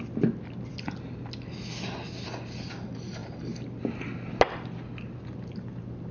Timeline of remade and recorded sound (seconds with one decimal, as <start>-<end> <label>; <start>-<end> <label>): 0.0-6.1 recorded